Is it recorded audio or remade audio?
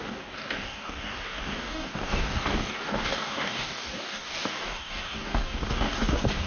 remade